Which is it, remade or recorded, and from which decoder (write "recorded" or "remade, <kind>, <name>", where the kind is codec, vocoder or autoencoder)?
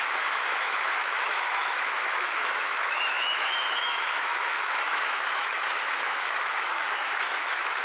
remade, autoencoder, DAC-VAE